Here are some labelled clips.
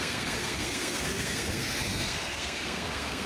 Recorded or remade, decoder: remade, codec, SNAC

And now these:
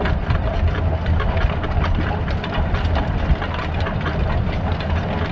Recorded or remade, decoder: recorded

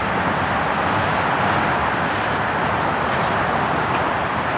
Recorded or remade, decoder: recorded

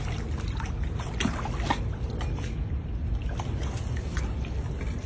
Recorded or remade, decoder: recorded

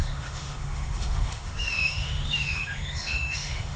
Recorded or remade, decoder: remade, autoencoder, DAC-VAE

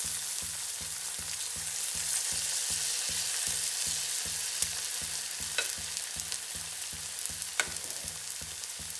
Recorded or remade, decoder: recorded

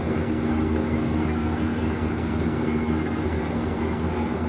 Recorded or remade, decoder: remade, codec, SNAC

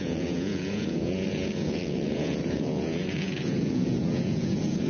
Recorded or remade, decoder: remade, vocoder, Vocos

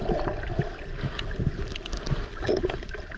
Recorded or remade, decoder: recorded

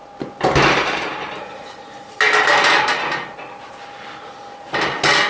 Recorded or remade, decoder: recorded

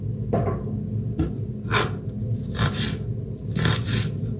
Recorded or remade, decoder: recorded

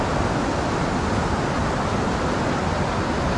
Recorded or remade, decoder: recorded